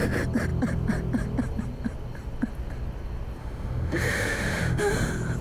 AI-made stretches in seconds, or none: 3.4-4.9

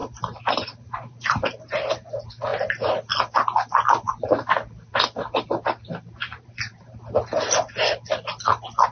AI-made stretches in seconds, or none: 0.0-2.1; 6.2-7.1

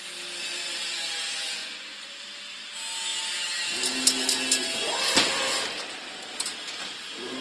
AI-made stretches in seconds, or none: 0.4-1.0; 1.6-2.2